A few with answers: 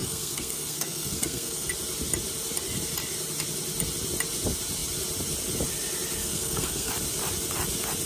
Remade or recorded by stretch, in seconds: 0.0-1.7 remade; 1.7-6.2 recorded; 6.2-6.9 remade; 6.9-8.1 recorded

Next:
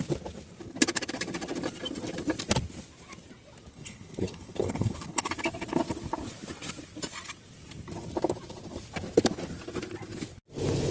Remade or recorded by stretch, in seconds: 0.0-3.7 recorded; 3.7-5.3 remade; 5.3-10.9 recorded

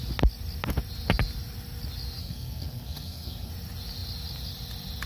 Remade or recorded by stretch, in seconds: 0.0-2.2 recorded; 2.2-3.5 remade; 3.5-5.1 recorded

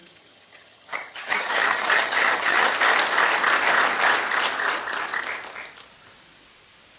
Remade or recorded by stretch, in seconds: 0.0-2.7 remade; 2.7-7.0 recorded

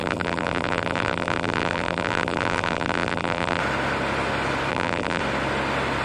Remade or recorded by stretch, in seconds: 0.0-3.6 remade; 3.6-4.7 recorded; 4.7-5.2 remade; 5.2-6.0 recorded